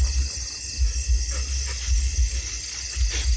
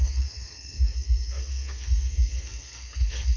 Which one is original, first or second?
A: first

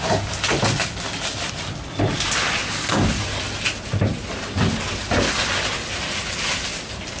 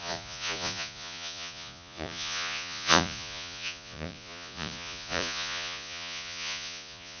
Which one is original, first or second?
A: first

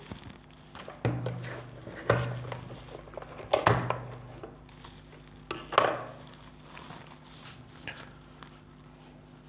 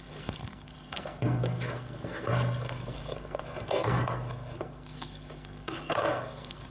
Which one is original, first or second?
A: first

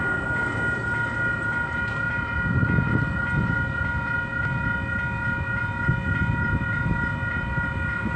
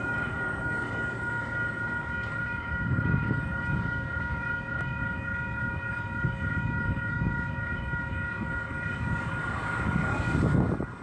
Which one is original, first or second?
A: first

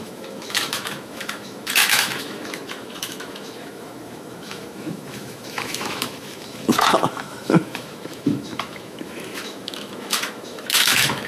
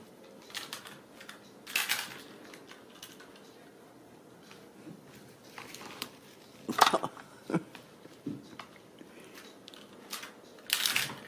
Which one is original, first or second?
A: second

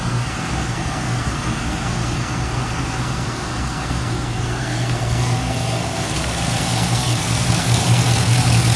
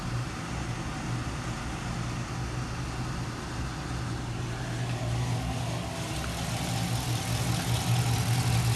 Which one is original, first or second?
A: second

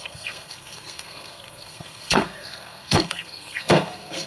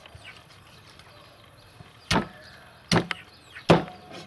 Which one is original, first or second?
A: second